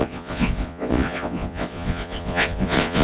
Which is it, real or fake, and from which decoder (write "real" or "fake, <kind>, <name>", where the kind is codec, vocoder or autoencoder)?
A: fake, vocoder, Vocos